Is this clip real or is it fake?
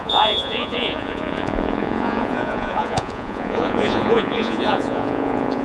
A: fake